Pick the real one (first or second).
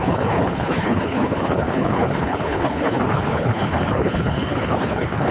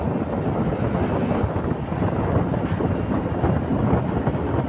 second